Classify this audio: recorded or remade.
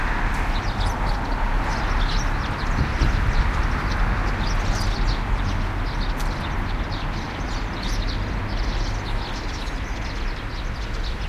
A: recorded